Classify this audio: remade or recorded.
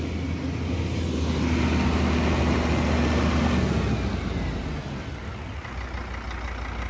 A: recorded